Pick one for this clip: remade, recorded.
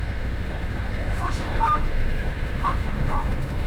remade